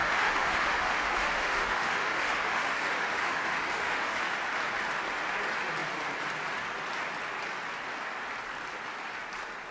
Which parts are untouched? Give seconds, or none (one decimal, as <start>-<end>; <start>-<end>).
4.4-9.7